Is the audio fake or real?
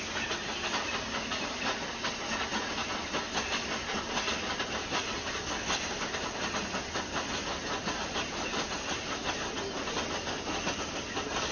real